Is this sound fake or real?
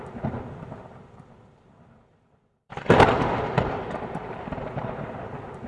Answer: fake